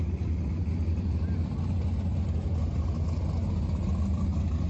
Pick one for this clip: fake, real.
real